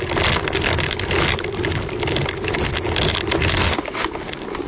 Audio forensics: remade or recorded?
recorded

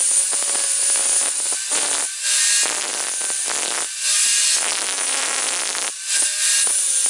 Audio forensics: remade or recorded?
recorded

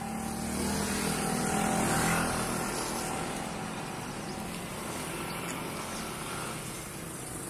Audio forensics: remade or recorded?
recorded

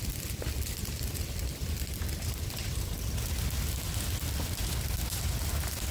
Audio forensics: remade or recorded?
recorded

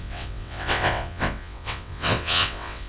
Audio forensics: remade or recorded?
remade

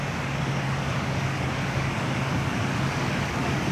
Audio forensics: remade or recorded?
remade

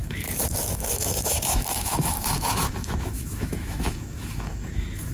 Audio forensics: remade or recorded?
remade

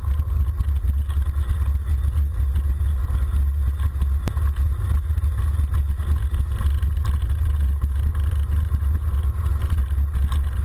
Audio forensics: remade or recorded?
recorded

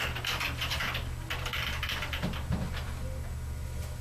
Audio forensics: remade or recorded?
recorded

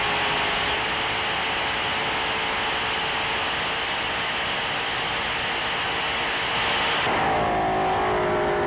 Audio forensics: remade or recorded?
recorded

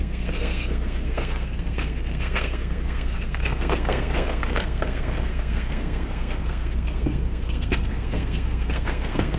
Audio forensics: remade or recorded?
remade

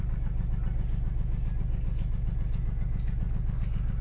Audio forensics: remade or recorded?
recorded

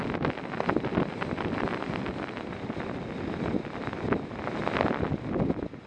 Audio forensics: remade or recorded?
recorded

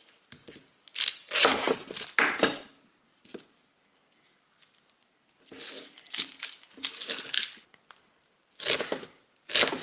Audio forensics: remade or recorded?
recorded